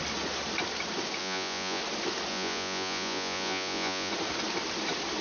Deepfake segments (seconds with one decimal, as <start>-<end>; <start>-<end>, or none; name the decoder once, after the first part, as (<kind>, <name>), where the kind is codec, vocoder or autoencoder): 1.2-1.8 (vocoder, Vocos); 2.3-4.1